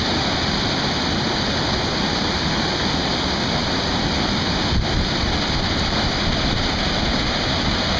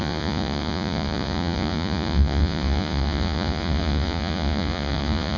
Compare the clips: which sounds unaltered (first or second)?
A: first